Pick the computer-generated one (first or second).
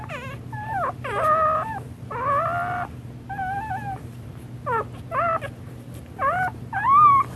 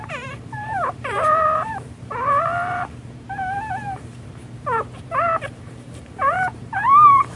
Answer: second